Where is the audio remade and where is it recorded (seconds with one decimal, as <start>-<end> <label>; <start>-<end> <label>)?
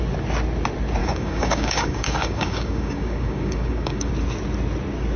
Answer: 0.0-1.0 recorded; 1.0-4.1 remade; 4.1-5.2 recorded